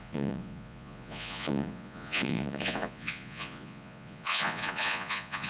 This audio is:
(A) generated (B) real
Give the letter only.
A